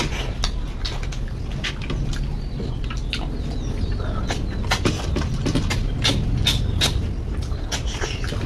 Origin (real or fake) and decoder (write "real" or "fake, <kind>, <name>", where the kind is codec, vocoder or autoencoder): real